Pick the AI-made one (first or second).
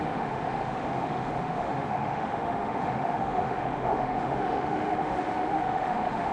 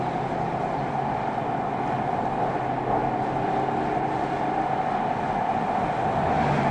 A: first